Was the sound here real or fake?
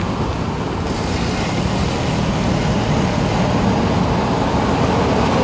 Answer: real